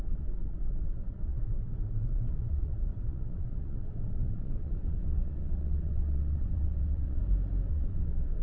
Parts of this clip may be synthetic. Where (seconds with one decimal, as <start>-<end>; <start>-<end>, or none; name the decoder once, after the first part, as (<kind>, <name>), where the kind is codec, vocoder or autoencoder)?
0.0-7.2 (vocoder, WaveNeXt); 7.7-8.4